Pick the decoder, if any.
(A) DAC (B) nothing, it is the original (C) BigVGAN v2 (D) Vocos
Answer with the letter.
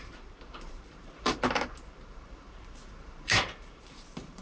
C